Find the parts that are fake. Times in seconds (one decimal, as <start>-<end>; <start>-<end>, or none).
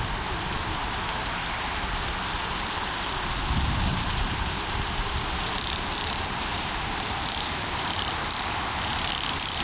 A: 3.9-9.1